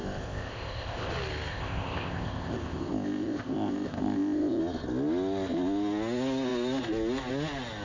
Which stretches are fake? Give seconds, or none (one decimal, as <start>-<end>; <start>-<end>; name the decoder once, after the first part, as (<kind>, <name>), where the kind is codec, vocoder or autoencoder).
0.0-1.1 (codec, ZipCodec); 1.5-4.6